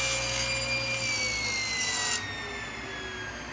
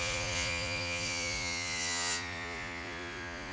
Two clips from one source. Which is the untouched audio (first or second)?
first